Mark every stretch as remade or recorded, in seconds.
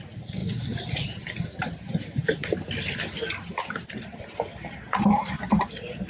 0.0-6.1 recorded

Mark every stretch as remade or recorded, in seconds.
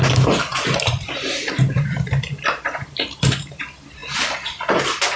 0.0-0.5 recorded; 0.5-3.6 remade; 3.6-5.2 recorded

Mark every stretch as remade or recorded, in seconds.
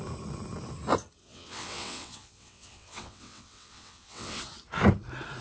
0.0-1.2 recorded; 1.2-4.4 remade; 4.4-5.4 recorded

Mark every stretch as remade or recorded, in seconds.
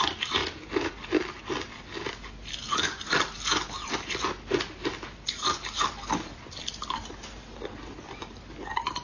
0.0-9.0 recorded